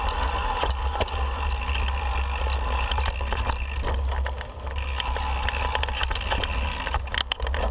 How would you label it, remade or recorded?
recorded